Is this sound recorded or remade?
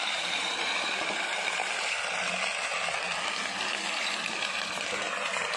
remade